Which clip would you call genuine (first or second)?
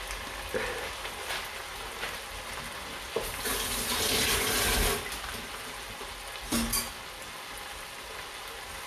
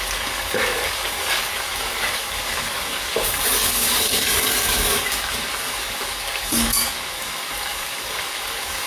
first